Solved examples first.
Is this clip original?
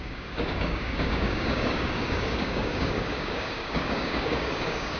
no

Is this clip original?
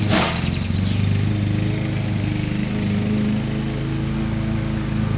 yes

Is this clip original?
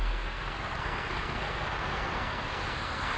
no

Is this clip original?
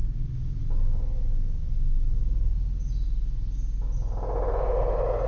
yes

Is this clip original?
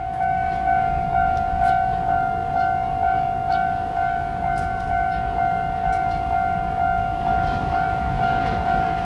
no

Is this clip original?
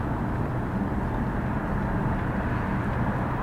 yes